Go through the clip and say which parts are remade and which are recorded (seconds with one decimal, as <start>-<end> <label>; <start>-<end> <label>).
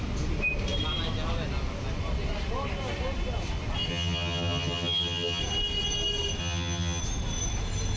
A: 0.0-3.9 recorded; 3.9-5.4 remade; 5.4-6.4 recorded; 6.4-7.0 remade; 7.0-8.0 recorded